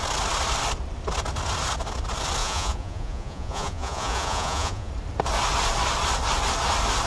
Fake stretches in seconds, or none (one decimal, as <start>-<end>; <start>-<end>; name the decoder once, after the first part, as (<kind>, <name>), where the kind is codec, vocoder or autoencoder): 2.4-4.9 (vocoder, Vocos)